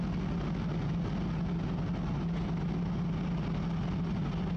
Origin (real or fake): real